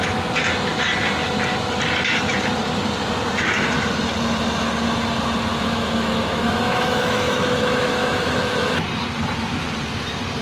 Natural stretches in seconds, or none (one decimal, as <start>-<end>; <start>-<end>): 0.0-5.5; 8.7-10.4